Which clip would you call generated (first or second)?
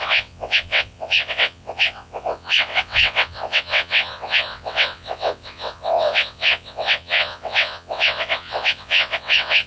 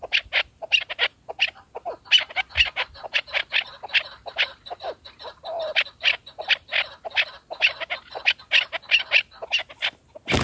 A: first